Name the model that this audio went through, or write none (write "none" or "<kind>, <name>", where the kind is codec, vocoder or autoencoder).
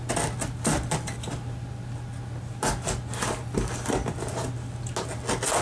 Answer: none